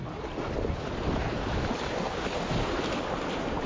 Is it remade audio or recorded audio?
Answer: recorded